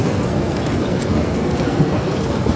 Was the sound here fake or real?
fake